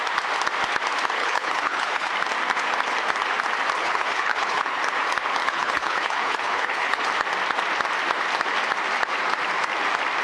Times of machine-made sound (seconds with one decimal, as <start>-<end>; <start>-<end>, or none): 1.2-2.1; 3.8-4.8; 5.4-7.1